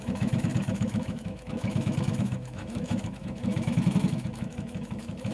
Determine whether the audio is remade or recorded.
remade